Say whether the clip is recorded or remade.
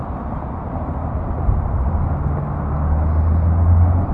recorded